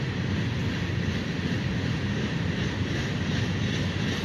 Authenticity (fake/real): real